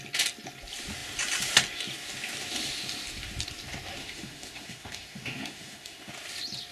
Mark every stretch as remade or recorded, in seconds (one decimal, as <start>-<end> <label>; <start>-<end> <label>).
0.0-4.0 recorded; 4.0-6.1 remade; 6.1-6.7 recorded